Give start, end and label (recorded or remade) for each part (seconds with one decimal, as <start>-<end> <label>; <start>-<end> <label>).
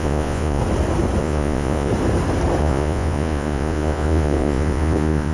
0.0-0.6 remade; 0.6-1.2 recorded; 1.2-1.9 remade; 1.9-2.6 recorded; 2.6-5.3 remade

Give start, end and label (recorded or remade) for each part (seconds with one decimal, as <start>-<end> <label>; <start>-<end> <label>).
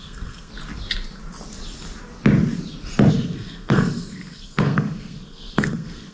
0.0-0.5 remade; 0.5-3.1 recorded; 3.1-6.1 remade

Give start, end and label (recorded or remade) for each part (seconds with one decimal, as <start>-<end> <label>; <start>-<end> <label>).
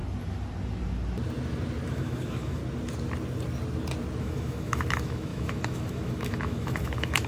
0.0-1.9 recorded; 1.9-2.6 remade; 2.6-4.2 recorded; 4.2-7.3 remade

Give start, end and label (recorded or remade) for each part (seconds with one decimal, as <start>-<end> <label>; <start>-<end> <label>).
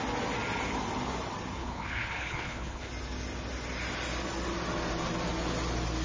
0.0-1.6 recorded; 1.6-2.9 remade; 2.9-6.0 recorded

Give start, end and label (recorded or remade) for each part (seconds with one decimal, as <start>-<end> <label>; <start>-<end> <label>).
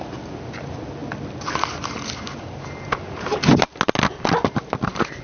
0.0-5.2 recorded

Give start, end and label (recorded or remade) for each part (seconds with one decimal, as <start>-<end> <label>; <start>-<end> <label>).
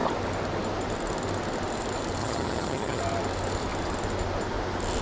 0.0-2.2 recorded; 2.2-3.0 remade; 3.0-5.0 recorded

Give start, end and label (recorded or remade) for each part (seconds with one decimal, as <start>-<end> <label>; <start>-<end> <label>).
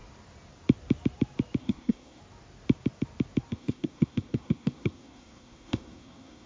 0.0-1.6 recorded; 1.6-2.2 remade; 2.2-3.5 recorded; 3.5-6.5 remade